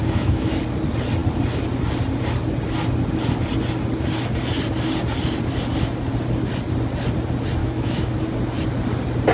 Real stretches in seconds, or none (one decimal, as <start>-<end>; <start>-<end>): 0.5-7.6; 8.2-9.3